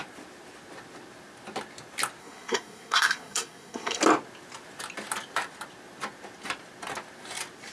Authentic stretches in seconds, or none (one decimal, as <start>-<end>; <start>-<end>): 0.0-2.2; 4.0-7.7